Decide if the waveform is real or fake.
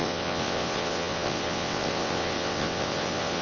fake